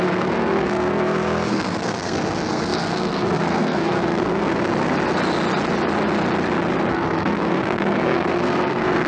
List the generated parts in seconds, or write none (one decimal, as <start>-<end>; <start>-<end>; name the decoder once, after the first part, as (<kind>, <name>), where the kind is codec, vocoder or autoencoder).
0.0-4.7 (codec, SNAC); 6.9-9.1